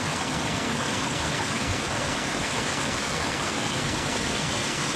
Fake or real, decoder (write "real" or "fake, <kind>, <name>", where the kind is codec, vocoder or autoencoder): fake, codec, SNAC